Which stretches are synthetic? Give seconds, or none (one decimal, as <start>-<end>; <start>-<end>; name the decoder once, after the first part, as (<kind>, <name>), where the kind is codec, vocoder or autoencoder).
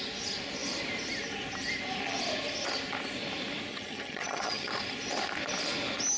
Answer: 3.7-4.7 (vocoder, HiFi-GAN)